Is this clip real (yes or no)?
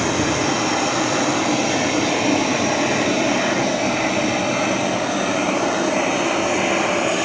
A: yes